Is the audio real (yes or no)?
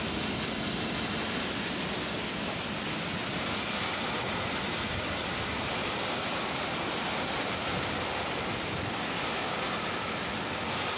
yes